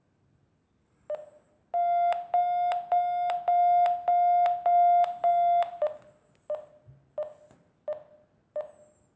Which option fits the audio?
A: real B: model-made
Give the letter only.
A